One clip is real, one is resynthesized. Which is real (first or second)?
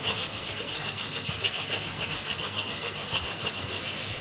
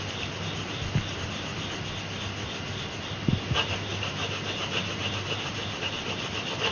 second